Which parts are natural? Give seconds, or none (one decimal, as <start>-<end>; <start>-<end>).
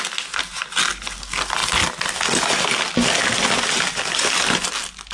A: 0.0-5.1